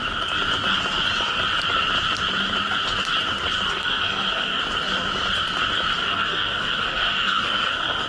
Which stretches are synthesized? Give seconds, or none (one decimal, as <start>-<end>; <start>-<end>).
3.7-4.6; 6.0-8.1

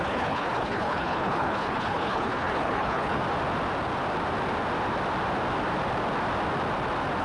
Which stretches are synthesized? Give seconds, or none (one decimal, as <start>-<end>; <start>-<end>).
0.0-3.2

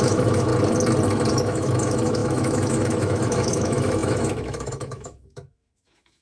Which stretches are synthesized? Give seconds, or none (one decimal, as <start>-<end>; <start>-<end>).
0.0-0.5; 1.3-6.2

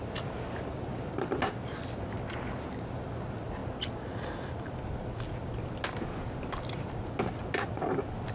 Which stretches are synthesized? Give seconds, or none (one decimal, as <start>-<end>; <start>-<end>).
none

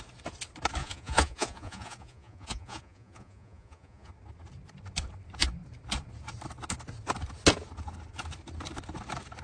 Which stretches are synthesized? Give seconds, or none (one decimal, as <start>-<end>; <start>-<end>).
0.8-4.1

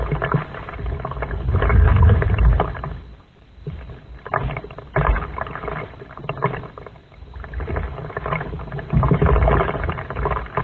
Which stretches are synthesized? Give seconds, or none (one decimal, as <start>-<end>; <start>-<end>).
1.9-6.7

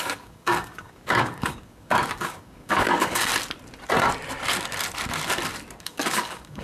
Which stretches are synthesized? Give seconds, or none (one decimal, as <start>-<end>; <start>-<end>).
0.0-3.3; 5.8-6.6

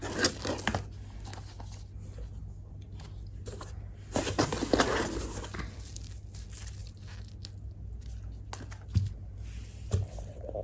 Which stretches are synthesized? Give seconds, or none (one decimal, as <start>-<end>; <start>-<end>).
none